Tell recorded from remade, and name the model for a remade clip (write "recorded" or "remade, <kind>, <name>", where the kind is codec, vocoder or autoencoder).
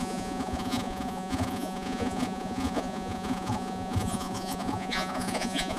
remade, vocoder, Vocos